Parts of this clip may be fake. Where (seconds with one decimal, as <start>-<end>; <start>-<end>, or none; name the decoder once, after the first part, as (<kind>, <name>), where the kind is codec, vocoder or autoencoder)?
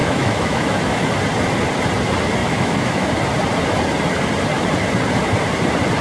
0.0-1.1 (autoencoder, DAC-VAE); 2.4-3.1